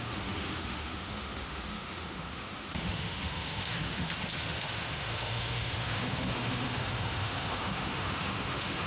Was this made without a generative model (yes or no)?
no